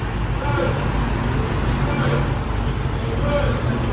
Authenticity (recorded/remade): recorded